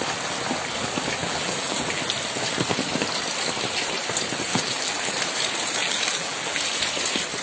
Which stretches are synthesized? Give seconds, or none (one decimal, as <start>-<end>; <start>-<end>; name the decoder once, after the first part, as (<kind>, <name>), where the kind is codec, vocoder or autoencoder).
1.2-2.0 (vocoder, BigVGAN v2); 4.5-5.1; 5.8-6.6